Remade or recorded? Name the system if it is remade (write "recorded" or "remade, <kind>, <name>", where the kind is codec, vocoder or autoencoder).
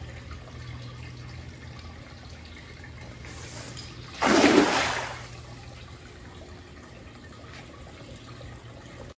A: recorded